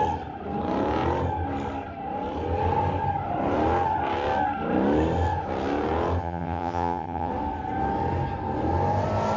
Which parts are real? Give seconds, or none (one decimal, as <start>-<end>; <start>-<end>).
0.0-6.2; 7.3-9.4